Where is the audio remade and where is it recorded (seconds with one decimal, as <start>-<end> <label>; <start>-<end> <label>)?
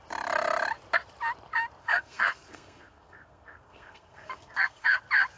0.0-1.8 recorded; 1.8-5.0 remade; 5.0-5.4 recorded